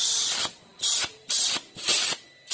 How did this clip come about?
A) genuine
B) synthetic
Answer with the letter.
A